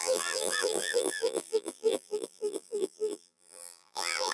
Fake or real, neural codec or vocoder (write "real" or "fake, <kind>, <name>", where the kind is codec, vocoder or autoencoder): fake, vocoder, BigVGAN v2